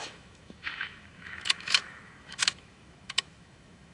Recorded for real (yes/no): no